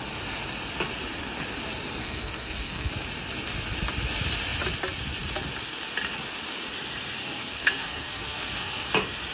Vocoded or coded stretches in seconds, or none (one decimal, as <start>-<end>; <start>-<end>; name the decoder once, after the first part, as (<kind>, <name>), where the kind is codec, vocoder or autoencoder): 2.0-2.9 (codec, SNAC); 7.2-8.9